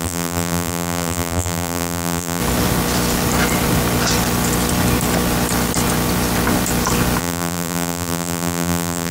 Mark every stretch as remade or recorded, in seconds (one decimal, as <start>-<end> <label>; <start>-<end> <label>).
0.0-2.4 remade; 2.4-7.2 recorded; 7.2-9.1 remade